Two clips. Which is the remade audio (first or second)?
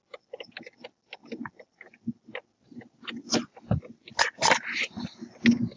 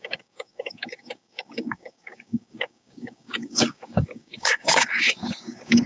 second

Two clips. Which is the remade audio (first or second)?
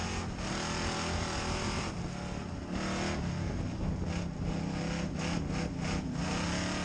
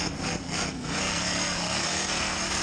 second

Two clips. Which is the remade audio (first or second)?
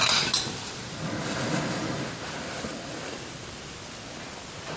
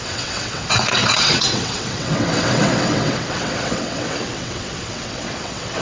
second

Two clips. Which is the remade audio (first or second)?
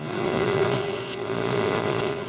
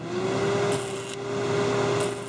first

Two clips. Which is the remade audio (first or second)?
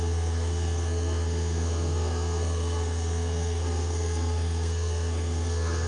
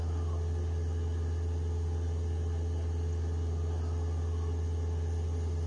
first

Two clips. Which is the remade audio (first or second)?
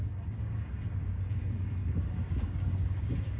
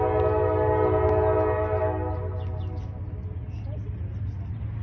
first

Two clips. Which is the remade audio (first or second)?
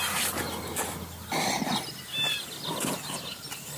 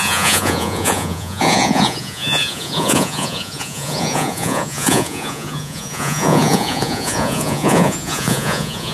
second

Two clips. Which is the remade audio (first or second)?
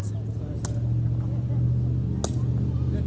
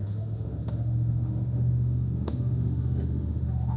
second